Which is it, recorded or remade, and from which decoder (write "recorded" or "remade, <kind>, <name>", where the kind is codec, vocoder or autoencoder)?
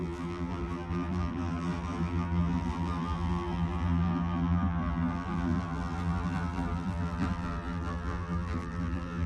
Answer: remade, vocoder, BigVGAN v2